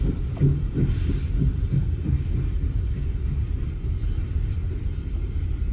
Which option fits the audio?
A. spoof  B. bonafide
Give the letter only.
B